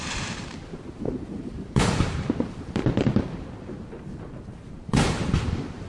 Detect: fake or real fake